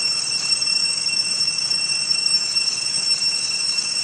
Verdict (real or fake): fake